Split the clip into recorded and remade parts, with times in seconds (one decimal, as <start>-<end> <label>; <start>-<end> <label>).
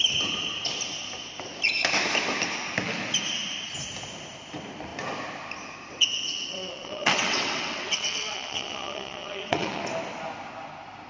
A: 0.0-5.9 recorded; 5.9-9.8 remade; 9.8-11.1 recorded